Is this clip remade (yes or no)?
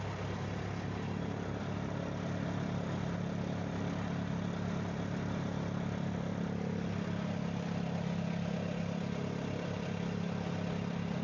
no